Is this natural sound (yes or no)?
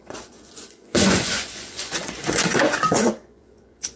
no